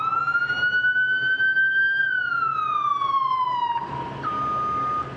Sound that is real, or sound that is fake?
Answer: real